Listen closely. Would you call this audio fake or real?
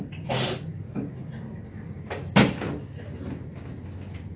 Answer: real